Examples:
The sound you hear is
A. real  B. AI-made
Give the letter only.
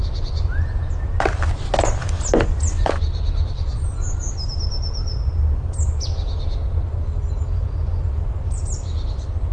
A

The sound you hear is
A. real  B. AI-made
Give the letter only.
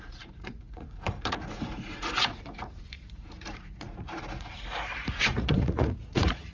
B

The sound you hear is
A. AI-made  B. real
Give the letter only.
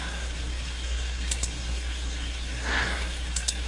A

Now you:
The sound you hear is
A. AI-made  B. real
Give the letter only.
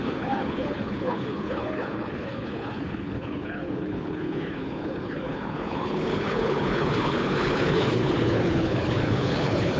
A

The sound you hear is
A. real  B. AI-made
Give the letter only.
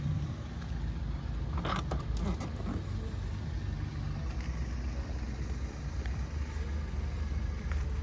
A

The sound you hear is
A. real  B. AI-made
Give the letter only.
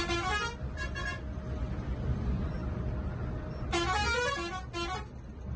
A